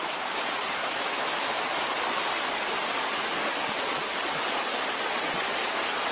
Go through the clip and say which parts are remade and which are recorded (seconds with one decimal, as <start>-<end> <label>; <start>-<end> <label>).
0.0-0.8 recorded; 0.8-1.6 remade; 1.6-6.1 recorded